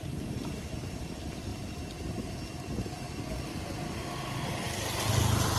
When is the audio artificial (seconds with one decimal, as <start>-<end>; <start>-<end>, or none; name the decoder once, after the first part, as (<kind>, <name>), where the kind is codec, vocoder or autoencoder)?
none